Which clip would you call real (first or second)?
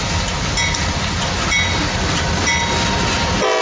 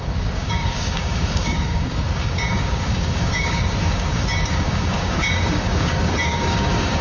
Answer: first